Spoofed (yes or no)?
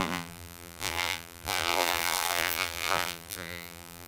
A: yes